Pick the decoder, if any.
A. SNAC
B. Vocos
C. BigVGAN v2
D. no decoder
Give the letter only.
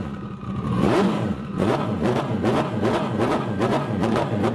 B